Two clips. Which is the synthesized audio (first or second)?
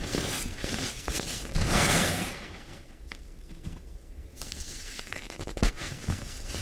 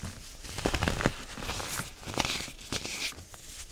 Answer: first